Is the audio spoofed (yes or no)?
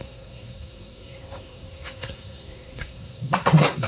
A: yes